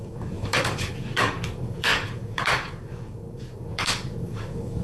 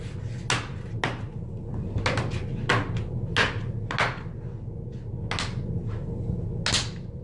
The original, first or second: second